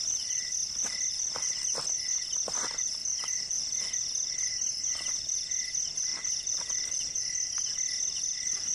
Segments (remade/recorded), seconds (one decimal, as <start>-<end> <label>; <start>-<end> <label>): 0.0-3.0 recorded; 3.0-3.8 remade; 3.8-6.1 recorded; 6.1-7.2 remade; 7.2-8.7 recorded